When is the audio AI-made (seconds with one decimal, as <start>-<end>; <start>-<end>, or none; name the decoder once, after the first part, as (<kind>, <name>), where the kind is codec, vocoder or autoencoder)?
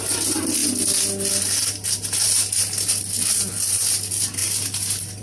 none